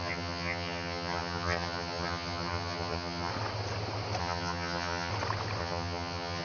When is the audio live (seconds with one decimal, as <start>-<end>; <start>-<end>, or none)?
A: 3.3-4.2; 5.1-5.6